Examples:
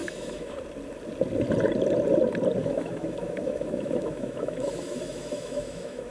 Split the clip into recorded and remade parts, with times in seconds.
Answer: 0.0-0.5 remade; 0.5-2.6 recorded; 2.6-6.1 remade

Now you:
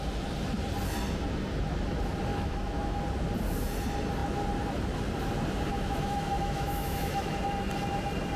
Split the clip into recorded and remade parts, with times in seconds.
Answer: 0.0-2.3 recorded; 2.3-3.0 remade; 3.0-5.7 recorded; 5.7-7.4 remade; 7.4-8.4 recorded

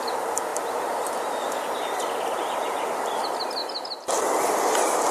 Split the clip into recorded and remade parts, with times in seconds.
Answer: 0.0-5.1 recorded

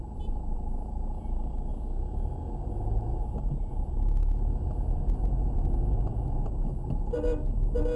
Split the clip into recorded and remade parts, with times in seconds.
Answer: 0.0-8.0 recorded

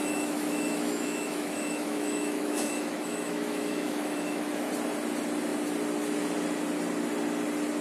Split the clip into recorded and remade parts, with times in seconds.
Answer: 0.0-4.7 remade; 4.7-7.8 recorded

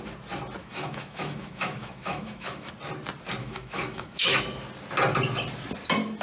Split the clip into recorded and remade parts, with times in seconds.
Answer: 0.0-0.6 recorded; 0.6-2.7 remade; 2.7-3.4 recorded; 3.4-4.4 remade; 4.4-6.2 recorded

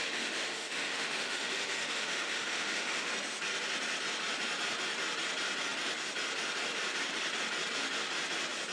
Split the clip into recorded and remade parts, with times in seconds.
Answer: 0.0-3.1 remade; 3.1-8.7 recorded